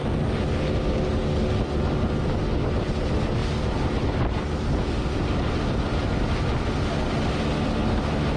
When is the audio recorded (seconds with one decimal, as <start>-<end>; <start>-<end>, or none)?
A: 0.0-8.4